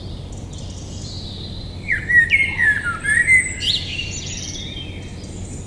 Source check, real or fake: real